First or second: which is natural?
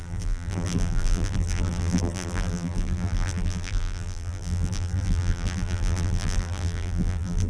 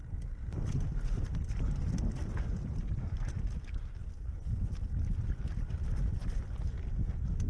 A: second